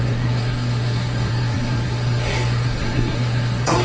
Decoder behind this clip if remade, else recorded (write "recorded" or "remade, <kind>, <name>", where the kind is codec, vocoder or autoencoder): remade, codec, SNAC